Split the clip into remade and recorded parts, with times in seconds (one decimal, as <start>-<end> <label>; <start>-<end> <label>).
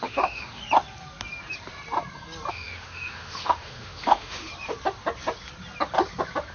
0.0-0.6 remade; 0.6-2.5 recorded; 2.5-4.5 remade; 4.5-6.5 recorded